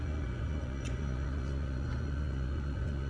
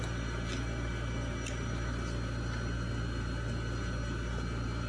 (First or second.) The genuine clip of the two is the second